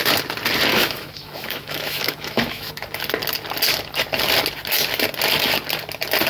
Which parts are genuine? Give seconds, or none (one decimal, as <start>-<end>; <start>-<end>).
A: 0.0-0.7; 2.7-6.3